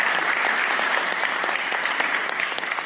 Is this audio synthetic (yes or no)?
no